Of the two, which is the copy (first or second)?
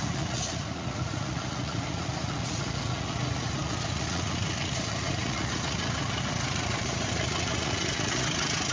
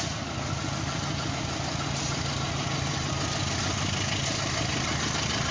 first